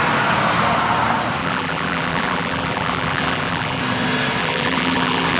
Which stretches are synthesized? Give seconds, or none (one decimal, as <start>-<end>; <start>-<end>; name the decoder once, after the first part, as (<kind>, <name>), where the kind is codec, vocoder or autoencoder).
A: 1.4-3.8 (vocoder, BigVGAN v2); 4.4-5.4